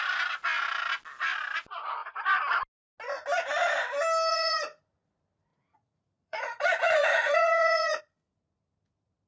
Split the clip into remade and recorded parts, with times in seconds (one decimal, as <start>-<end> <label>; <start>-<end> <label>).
0.0-4.3 recorded; 4.3-4.8 remade; 4.8-5.5 recorded; 5.5-8.0 remade; 8.0-9.3 recorded